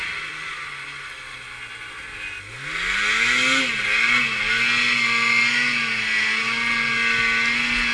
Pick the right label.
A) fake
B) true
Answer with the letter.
B